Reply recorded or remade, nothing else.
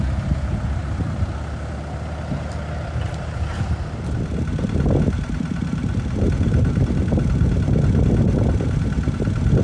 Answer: recorded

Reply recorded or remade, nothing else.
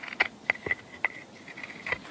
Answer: recorded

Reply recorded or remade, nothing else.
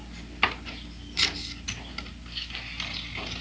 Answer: recorded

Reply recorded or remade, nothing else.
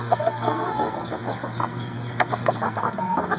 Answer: remade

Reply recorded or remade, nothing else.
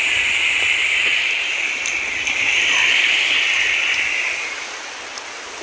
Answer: recorded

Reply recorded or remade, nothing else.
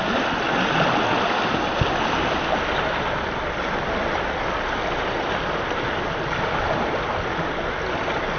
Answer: recorded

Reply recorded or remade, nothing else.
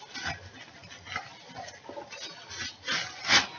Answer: recorded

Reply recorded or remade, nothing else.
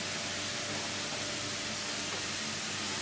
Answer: recorded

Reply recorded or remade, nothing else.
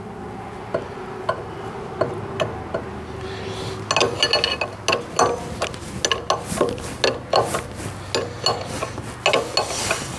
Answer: recorded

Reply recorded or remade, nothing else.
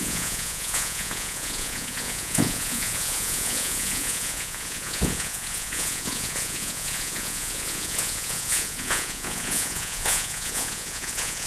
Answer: remade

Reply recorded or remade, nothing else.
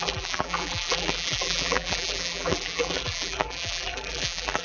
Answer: remade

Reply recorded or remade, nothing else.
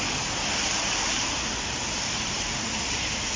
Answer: recorded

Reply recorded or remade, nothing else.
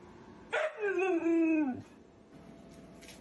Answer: recorded